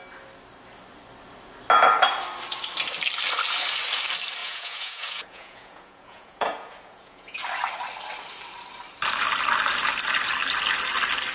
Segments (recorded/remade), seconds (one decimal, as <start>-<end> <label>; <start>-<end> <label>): 0.0-4.4 recorded; 4.4-7.4 remade; 7.4-11.3 recorded